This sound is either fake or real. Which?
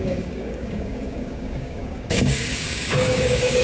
fake